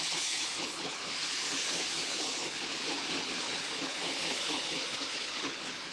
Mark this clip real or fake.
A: fake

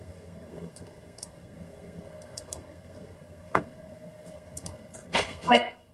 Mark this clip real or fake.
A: fake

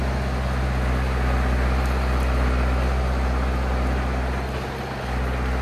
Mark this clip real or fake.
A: real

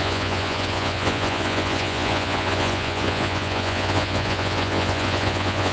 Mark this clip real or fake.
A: fake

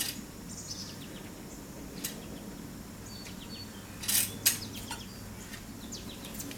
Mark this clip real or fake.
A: real